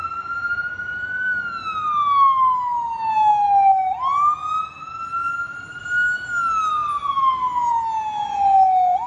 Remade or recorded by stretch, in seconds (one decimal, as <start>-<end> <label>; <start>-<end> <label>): 0.0-9.1 recorded